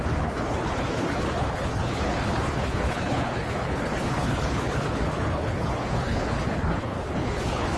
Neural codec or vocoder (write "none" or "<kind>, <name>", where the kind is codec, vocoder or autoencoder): codec, HILCodec